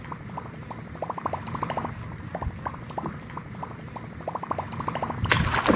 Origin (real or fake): real